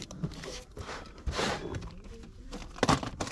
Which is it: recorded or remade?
remade